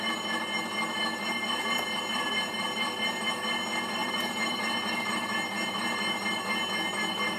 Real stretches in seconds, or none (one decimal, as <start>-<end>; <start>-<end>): 0.0-4.0; 5.3-7.4